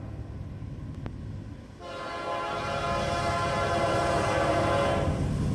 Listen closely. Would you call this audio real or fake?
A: real